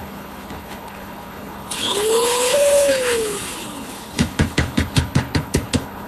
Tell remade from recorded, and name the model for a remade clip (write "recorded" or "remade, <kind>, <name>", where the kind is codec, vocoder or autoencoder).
remade, codec, HILCodec